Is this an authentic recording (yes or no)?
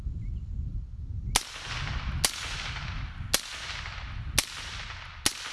yes